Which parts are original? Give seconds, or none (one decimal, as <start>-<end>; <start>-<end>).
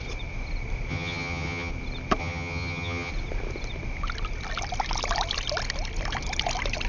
0.0-0.9; 1.7-2.2; 3.1-6.9